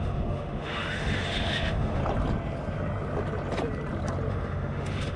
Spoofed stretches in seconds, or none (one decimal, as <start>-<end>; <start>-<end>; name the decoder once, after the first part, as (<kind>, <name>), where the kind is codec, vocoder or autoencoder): 0.0-2.0 (autoencoder, DAC-VAE); 4.3-5.2